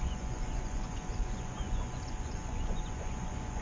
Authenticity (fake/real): fake